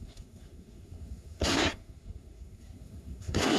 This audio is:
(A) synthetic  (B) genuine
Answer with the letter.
A